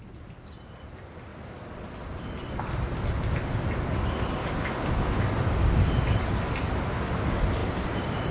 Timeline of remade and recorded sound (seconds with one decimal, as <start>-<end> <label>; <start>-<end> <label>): 0.0-4.4 recorded; 4.4-5.3 remade; 5.3-8.3 recorded